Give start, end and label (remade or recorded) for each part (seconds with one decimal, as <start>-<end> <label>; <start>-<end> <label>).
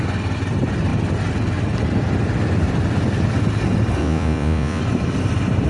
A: 0.0-4.0 recorded; 4.0-4.8 remade; 4.8-5.7 recorded